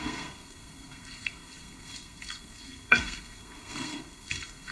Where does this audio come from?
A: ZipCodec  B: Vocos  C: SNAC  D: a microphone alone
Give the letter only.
C